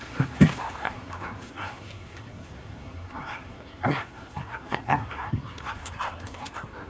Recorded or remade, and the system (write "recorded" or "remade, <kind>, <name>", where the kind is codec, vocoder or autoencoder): remade, codec, SNAC